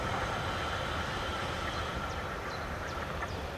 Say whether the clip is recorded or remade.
recorded